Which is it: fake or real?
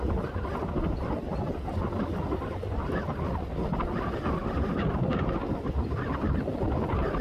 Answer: real